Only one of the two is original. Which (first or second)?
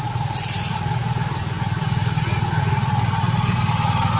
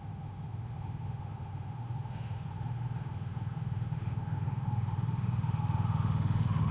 first